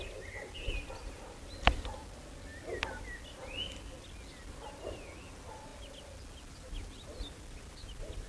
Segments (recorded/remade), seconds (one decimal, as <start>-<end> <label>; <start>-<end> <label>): 0.0-8.3 recorded